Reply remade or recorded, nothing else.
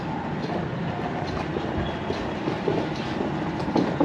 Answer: recorded